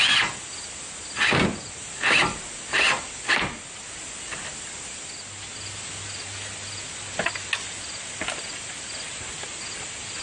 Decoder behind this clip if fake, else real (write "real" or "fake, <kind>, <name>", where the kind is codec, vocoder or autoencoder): real